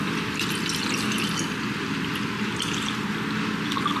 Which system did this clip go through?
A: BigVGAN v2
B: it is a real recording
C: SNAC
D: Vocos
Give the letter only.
B